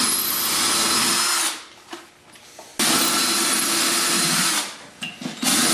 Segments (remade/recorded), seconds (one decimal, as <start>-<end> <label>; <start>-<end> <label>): 0.0-5.7 recorded

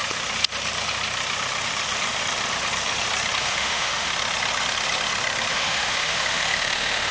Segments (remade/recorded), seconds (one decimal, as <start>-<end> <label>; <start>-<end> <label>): 0.0-3.4 recorded; 3.4-4.1 remade; 4.1-5.5 recorded; 5.5-7.1 remade

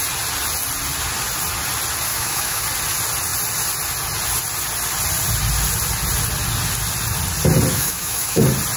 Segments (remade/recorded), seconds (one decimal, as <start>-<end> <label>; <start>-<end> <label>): 0.0-2.1 recorded; 2.1-2.6 remade; 2.6-7.7 recorded; 7.7-8.4 remade; 8.4-8.8 recorded

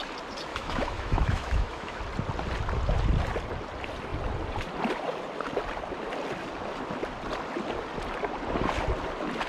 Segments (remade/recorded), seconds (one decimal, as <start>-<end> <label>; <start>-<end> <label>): 0.0-0.5 recorded; 0.5-2.0 remade; 2.0-9.5 recorded

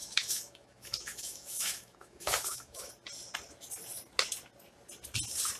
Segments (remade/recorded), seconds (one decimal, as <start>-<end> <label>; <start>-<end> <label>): 0.0-2.9 remade; 2.9-5.6 recorded

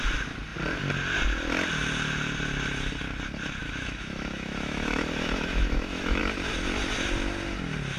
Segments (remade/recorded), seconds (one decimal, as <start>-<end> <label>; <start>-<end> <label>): 0.0-3.6 recorded; 3.6-6.2 remade; 6.2-8.0 recorded

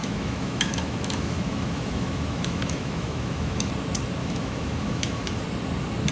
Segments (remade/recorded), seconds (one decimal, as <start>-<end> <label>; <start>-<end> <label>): 0.0-3.7 remade; 3.7-4.2 recorded; 4.2-5.4 remade; 5.4-6.1 recorded